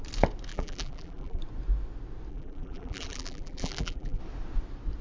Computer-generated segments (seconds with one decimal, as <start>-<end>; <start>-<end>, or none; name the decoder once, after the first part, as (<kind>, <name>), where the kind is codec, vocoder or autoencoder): 0.5-1.4 (vocoder, BigVGAN v2); 2.3-4.2